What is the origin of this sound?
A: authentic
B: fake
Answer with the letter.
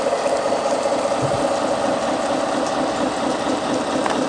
A